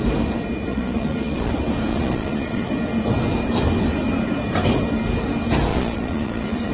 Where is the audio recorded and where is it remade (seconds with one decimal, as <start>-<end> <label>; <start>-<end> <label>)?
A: 0.0-0.7 recorded; 0.7-1.5 remade; 1.5-1.9 recorded; 1.9-2.7 remade; 2.7-5.7 recorded; 5.7-6.7 remade